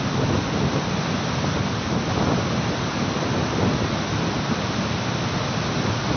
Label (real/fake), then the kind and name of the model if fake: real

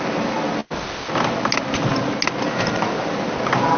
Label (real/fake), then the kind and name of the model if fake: real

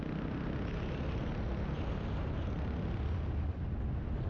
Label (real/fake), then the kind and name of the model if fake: real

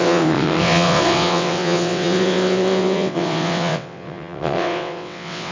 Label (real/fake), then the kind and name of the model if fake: fake, vocoder, WaveNeXt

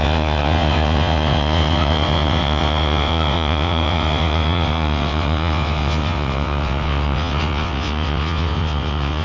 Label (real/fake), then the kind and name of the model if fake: fake, vocoder, WaveNeXt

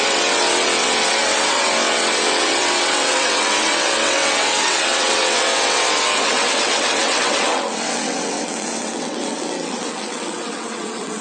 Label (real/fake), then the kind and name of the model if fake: fake, vocoder, WaveNeXt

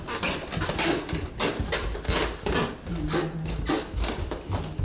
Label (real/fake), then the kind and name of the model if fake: real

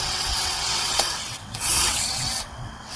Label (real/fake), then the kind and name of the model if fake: fake, vocoder, WaveNeXt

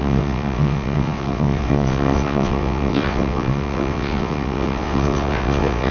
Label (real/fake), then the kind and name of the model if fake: fake, vocoder, WaveNeXt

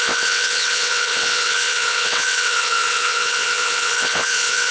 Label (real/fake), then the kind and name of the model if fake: fake, vocoder, WaveNeXt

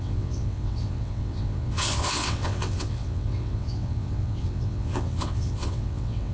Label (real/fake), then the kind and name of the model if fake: fake, vocoder, WaveNeXt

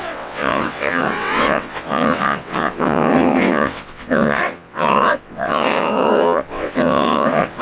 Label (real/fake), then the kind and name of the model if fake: fake, vocoder, WaveNeXt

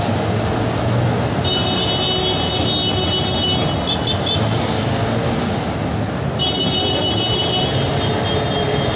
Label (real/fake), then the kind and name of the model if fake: real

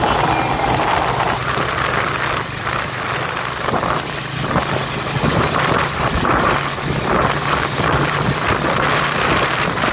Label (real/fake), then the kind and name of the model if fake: real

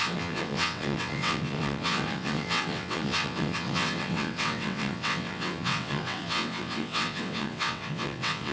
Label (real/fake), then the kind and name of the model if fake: fake, vocoder, WaveNeXt